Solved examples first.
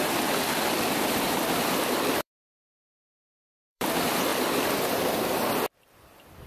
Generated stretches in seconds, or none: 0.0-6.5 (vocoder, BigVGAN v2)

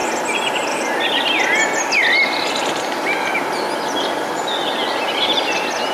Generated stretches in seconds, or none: none